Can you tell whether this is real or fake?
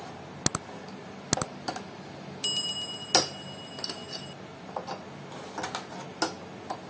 real